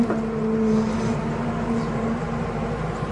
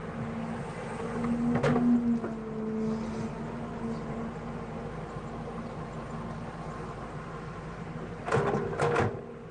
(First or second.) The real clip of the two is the second